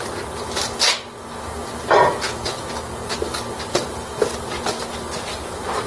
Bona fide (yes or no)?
yes